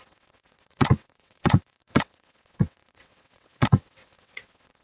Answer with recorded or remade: remade